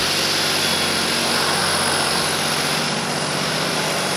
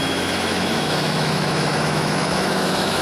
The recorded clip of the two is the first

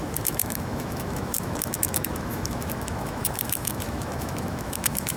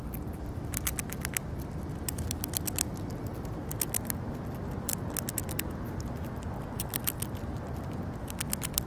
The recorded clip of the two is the second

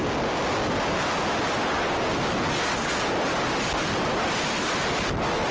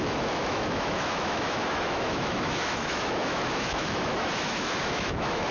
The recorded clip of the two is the first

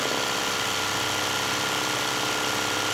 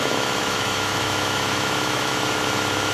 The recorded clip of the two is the first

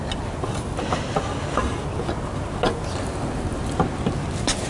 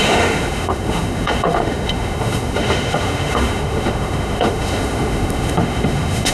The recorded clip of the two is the first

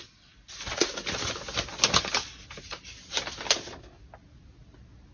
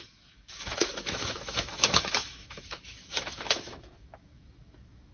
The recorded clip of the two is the first